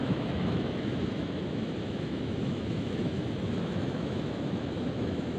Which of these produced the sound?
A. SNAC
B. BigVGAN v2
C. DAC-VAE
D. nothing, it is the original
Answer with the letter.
C